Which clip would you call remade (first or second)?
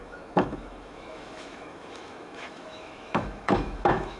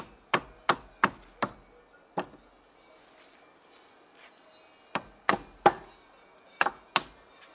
first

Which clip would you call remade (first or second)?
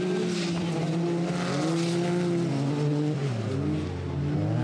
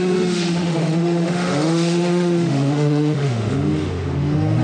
second